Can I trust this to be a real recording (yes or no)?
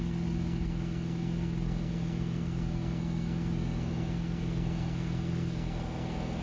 no